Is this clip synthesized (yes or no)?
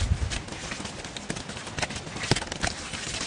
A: no